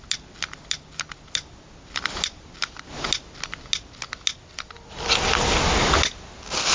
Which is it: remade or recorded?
recorded